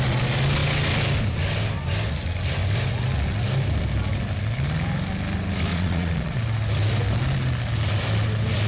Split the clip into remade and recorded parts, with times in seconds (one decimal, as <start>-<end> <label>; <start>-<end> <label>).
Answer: 0.0-5.7 recorded; 5.7-6.4 remade; 6.4-8.7 recorded